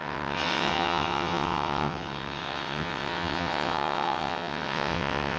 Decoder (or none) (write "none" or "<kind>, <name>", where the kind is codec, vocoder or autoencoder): vocoder, WaveNeXt